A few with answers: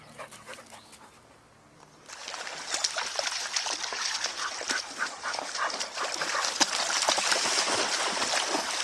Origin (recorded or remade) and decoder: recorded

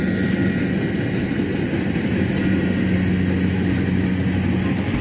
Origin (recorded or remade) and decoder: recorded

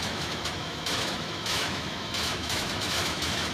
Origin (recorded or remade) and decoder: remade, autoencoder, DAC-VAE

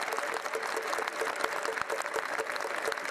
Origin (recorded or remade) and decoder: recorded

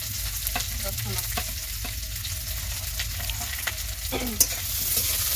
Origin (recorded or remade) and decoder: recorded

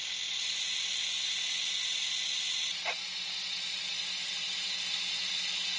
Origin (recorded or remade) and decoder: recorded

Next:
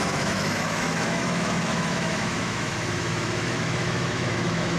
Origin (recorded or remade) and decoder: remade, autoencoder, DAC-VAE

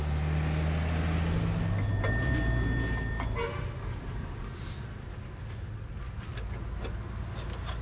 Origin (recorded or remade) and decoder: recorded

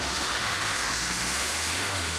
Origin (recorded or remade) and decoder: remade, autoencoder, DAC-VAE